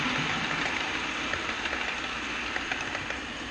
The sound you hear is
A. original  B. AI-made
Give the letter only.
A